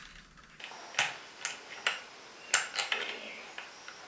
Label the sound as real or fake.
real